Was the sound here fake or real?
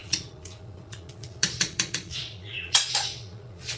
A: fake